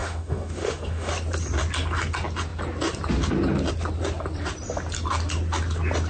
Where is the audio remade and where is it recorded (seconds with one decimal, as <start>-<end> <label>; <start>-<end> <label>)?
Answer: 0.0-1.1 remade; 1.1-6.1 recorded